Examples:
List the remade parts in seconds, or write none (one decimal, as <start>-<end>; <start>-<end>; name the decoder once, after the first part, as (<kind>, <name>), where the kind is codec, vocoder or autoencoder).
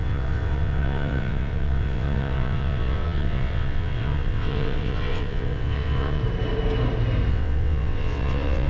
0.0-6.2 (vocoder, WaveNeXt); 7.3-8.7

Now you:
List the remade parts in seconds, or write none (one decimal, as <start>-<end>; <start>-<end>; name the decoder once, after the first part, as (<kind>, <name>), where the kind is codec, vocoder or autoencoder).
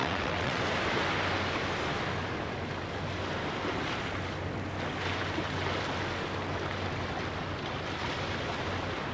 0.0-0.6 (vocoder, WaveNeXt)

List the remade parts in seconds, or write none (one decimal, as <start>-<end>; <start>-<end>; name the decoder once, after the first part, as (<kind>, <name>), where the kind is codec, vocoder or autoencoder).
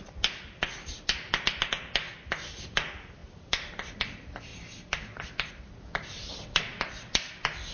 6.1-6.8 (vocoder, WaveNeXt)